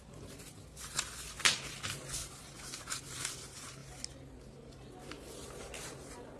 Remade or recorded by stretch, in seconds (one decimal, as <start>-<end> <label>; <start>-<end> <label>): 0.0-6.4 recorded